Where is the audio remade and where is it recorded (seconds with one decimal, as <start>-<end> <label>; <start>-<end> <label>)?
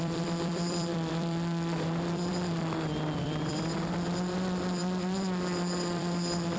0.0-6.6 remade